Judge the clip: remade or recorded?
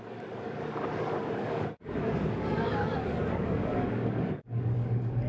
remade